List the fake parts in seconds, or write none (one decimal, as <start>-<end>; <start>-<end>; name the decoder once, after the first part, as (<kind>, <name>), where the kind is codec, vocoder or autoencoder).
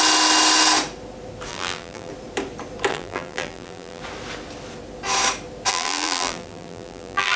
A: 1.5-2.1 (vocoder, BigVGAN v2); 2.9-4.0; 5.7-7.4